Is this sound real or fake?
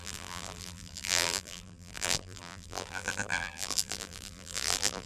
fake